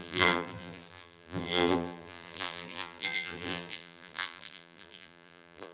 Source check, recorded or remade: remade